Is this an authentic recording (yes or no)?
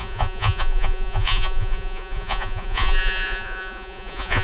no